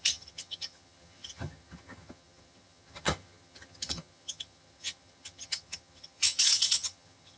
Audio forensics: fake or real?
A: fake